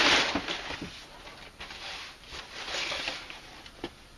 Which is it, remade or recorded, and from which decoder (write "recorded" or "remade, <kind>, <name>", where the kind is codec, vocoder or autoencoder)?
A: recorded